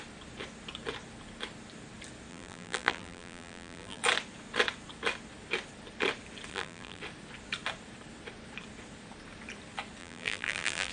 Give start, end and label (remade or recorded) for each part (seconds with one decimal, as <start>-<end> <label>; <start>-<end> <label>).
0.0-2.3 recorded; 2.3-4.0 remade; 4.0-6.5 recorded; 6.5-7.0 remade; 7.0-10.0 recorded; 10.0-10.9 remade